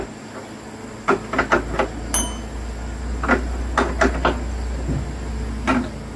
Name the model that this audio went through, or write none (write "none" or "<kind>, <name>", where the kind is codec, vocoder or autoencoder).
none